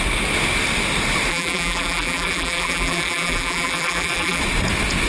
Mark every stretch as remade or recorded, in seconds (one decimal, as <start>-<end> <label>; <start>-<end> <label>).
0.0-1.3 recorded; 1.3-4.4 remade; 4.4-5.1 recorded